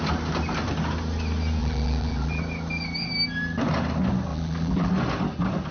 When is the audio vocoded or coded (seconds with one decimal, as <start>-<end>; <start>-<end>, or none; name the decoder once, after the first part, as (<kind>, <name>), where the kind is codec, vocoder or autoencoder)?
1.6-2.4 (vocoder, BigVGAN v2); 4.3-4.9